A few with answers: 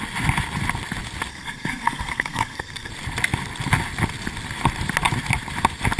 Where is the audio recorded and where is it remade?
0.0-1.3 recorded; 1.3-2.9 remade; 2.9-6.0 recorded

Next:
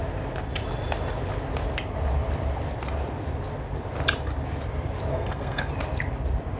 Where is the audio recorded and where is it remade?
0.0-5.1 recorded; 5.1-5.7 remade; 5.7-6.6 recorded

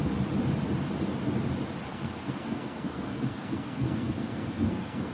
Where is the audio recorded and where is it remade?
0.0-1.9 recorded; 1.9-5.1 remade

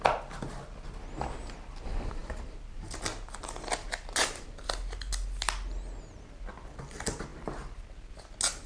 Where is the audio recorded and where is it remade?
0.0-8.7 recorded

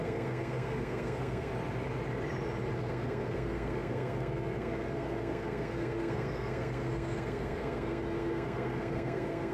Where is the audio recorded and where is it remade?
0.0-1.5 remade; 1.5-2.8 recorded; 2.8-9.5 remade

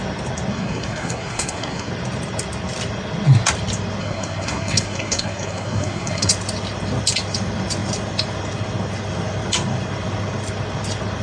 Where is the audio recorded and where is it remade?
0.0-0.5 recorded; 0.5-1.9 remade; 1.9-4.0 recorded; 4.0-6.3 remade; 6.3-11.2 recorded

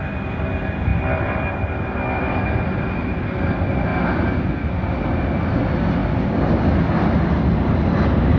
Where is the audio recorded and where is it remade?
0.0-8.4 recorded